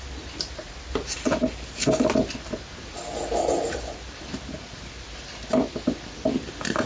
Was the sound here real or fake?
real